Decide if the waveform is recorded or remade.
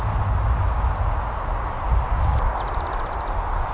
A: recorded